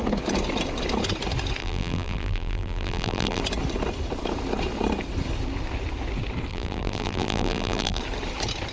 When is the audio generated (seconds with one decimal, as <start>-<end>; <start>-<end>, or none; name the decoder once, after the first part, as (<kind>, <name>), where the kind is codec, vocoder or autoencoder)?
1.6-3.4 (vocoder, BigVGAN v2); 6.5-8.0